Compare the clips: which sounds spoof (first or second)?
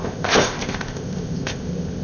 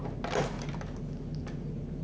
first